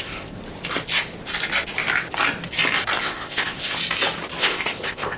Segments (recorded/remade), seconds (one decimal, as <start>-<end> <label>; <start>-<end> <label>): 0.0-0.4 remade; 0.4-3.0 recorded; 3.0-3.7 remade; 3.7-4.4 recorded; 4.4-5.2 remade